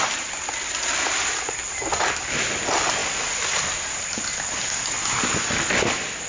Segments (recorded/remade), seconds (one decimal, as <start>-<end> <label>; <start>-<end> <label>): 0.0-6.3 recorded

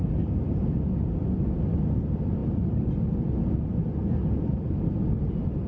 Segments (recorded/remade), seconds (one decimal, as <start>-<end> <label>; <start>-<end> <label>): 0.0-5.7 recorded

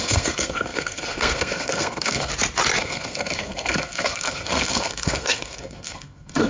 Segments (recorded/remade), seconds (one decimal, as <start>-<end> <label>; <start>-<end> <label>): 0.0-2.3 remade; 2.3-2.8 recorded; 2.8-6.5 remade

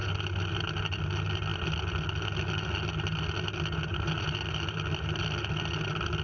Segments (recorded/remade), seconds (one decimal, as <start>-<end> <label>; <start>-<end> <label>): 0.0-6.2 recorded

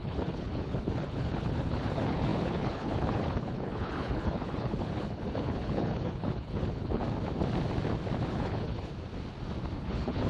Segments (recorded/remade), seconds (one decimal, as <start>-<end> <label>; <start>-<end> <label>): 0.0-7.0 remade; 7.0-8.3 recorded; 8.3-8.9 remade; 8.9-9.8 recorded; 9.8-10.3 remade

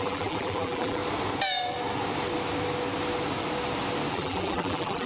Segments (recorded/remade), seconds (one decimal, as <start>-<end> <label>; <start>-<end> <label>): 0.0-1.0 remade; 1.0-4.1 recorded; 4.1-5.1 remade

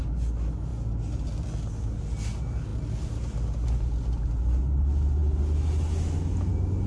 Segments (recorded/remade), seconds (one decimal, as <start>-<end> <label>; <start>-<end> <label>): 0.0-6.9 recorded